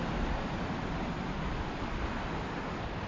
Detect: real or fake real